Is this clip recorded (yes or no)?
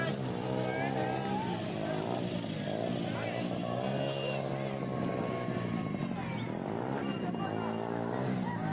yes